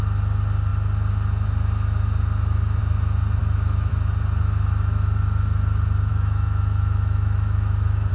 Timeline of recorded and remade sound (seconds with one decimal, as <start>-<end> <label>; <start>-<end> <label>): 0.0-3.4 recorded; 3.4-3.9 remade; 3.9-6.1 recorded; 6.1-8.1 remade